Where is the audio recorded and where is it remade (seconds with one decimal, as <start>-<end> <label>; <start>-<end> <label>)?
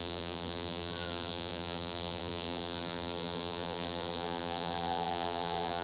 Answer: 0.0-5.8 remade